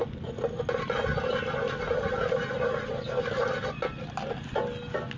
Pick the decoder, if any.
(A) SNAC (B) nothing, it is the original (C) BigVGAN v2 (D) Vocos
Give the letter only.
B